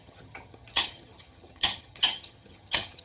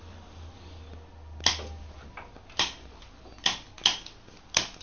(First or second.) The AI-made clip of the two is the first